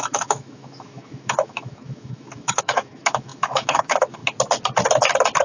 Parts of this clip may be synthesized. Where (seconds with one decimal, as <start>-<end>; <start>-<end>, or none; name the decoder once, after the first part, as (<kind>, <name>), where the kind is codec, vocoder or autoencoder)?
0.0-4.2 (autoencoder, DAC-VAE)